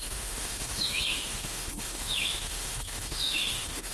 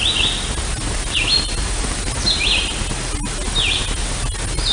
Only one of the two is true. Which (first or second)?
second